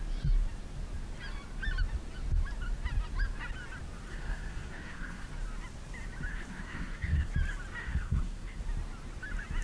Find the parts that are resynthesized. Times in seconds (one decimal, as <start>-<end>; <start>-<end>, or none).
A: 4.1-5.3; 6.3-7.3; 7.8-8.6